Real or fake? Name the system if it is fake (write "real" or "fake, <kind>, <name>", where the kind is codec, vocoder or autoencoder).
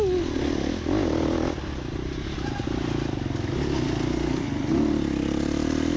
real